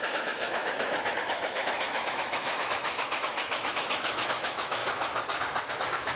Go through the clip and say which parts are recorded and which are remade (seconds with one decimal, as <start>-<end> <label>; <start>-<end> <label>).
0.0-4.8 remade; 4.8-5.7 recorded; 5.7-6.2 remade